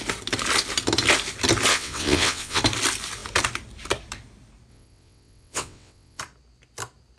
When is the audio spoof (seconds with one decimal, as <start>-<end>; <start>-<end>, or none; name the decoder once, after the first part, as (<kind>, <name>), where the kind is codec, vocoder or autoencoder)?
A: 1.7-2.6 (vocoder, WaveNeXt); 4.7-6.2